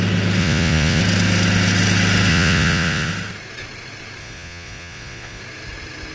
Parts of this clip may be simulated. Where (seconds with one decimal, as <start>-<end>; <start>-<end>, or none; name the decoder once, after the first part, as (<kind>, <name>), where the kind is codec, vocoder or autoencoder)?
0.4-1.0 (vocoder, Vocos); 2.3-3.1; 4.2-5.4